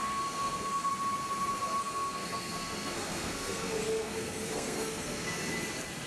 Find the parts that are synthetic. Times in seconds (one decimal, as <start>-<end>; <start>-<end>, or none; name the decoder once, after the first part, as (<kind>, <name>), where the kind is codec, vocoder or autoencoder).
0.0-0.9 (codec, SNAC); 1.8-5.5